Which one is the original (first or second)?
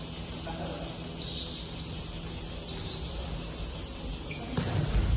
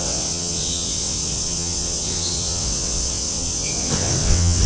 first